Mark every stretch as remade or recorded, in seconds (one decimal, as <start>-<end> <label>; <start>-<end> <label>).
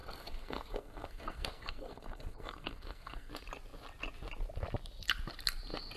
0.0-3.3 remade; 3.3-6.0 recorded